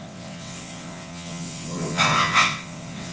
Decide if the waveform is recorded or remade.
remade